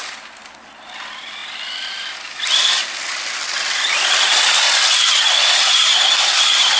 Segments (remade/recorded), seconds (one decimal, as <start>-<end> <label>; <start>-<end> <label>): 0.0-6.8 recorded